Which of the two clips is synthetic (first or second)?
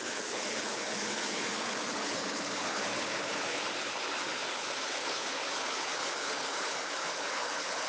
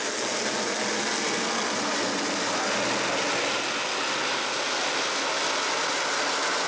first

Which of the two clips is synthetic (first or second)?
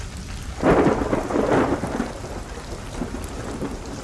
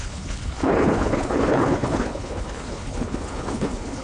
second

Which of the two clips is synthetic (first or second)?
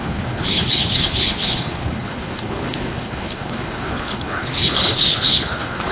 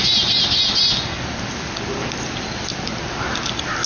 first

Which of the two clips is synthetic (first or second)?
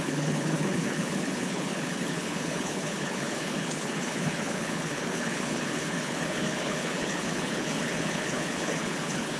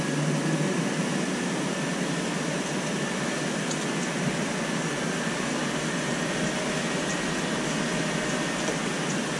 first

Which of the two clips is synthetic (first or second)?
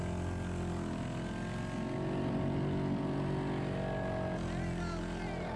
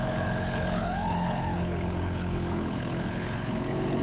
second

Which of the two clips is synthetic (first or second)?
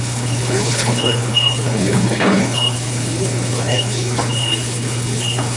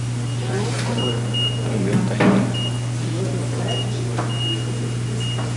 first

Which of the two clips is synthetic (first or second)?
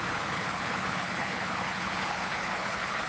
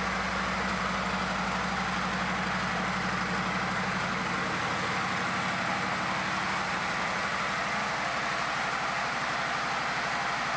first